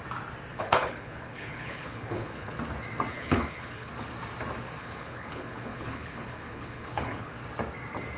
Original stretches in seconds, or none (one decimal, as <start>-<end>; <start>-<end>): 0.0-0.5; 2.5-3.1; 3.9-4.8; 7.3-8.2